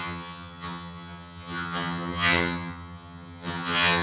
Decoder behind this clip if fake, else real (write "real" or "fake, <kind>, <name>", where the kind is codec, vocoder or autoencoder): fake, vocoder, HiFi-GAN